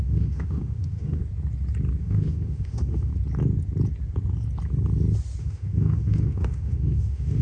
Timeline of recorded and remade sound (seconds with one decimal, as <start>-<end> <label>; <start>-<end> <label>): 0.0-1.2 remade; 1.2-2.0 recorded; 2.0-3.1 remade; 3.1-5.4 recorded; 5.4-7.4 remade